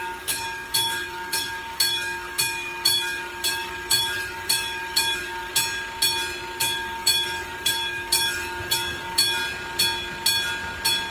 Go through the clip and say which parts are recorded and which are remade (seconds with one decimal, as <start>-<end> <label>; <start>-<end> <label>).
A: 0.0-5.5 remade; 5.5-6.6 recorded; 6.6-9.4 remade; 9.4-11.1 recorded